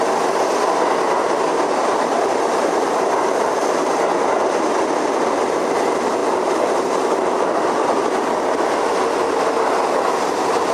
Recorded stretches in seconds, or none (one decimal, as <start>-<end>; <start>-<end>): 0.0-1.5; 4.1-6.2; 7.3-10.7